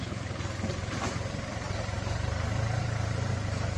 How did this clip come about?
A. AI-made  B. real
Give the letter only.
A